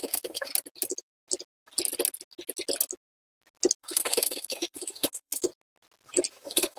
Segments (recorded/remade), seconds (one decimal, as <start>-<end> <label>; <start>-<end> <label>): 0.0-0.5 remade; 0.5-3.8 recorded; 3.8-5.5 remade; 5.5-6.3 recorded; 6.3-6.8 remade